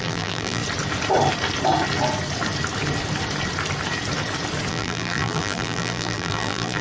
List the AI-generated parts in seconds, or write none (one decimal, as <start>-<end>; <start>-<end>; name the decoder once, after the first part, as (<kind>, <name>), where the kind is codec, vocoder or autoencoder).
0.0-0.6 (vocoder, BigVGAN v2); 4.7-6.8